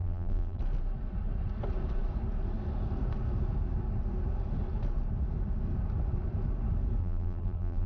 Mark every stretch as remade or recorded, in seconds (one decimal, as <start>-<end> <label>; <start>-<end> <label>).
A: 0.0-0.6 remade; 0.6-7.0 recorded; 7.0-7.9 remade